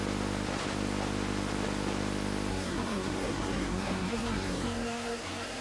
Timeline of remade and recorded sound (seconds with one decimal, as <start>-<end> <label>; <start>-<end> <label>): 0.0-2.5 recorded; 2.5-5.6 remade